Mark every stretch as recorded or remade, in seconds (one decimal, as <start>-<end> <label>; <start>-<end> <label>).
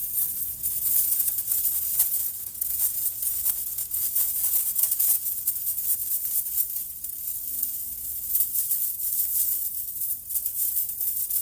0.0-3.1 remade; 3.1-3.8 recorded; 3.8-5.5 remade; 5.5-11.4 recorded